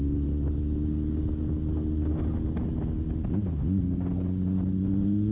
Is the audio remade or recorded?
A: recorded